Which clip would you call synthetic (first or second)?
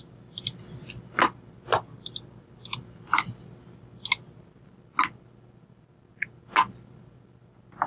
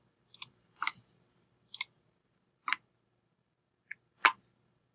second